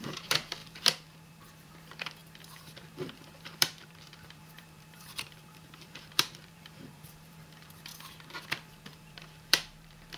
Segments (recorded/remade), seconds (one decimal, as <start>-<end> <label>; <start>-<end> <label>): 0.0-7.9 remade; 7.9-8.8 recorded; 8.8-10.2 remade